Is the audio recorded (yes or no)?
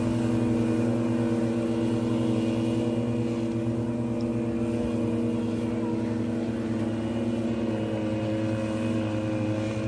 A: yes